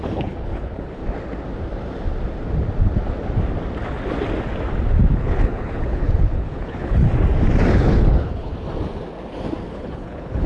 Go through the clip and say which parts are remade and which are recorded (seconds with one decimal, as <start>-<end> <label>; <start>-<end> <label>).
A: 0.0-1.0 remade; 1.0-5.1 recorded; 5.1-7.0 remade; 7.0-7.7 recorded; 7.7-8.5 remade; 8.5-9.7 recorded; 9.7-10.5 remade